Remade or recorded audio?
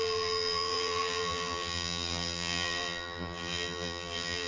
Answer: remade